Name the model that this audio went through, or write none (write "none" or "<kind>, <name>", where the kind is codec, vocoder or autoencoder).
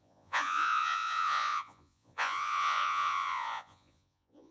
vocoder, Vocos